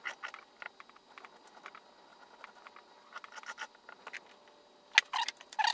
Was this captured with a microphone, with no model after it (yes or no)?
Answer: yes